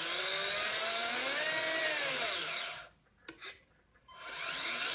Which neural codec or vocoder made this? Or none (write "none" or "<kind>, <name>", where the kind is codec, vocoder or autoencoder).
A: none